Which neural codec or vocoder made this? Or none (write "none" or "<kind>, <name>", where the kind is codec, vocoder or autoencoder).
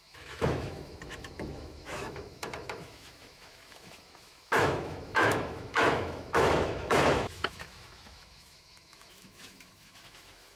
autoencoder, DAC-VAE